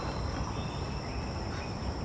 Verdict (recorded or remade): recorded